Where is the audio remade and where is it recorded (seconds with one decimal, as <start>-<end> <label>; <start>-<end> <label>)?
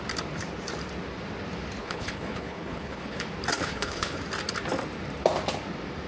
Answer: 0.0-1.8 recorded; 1.8-3.2 remade; 3.2-3.6 recorded; 3.6-4.2 remade; 4.2-6.1 recorded